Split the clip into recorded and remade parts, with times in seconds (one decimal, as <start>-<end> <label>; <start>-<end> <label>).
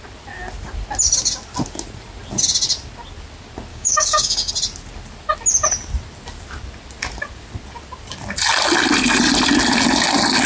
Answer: 0.0-3.7 recorded; 3.7-4.5 remade; 4.5-10.5 recorded